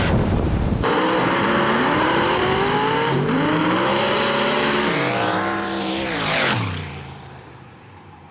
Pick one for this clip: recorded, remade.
remade